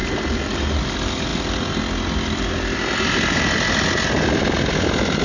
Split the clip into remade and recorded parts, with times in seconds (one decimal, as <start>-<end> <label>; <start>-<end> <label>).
0.0-5.2 recorded